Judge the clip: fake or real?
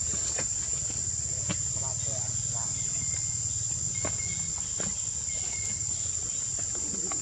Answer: real